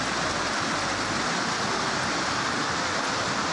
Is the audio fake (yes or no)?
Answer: no